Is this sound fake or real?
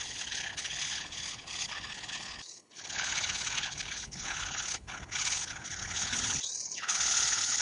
fake